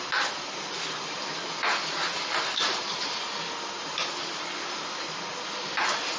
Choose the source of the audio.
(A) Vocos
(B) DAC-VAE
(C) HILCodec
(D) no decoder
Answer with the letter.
D